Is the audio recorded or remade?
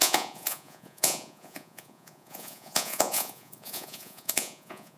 remade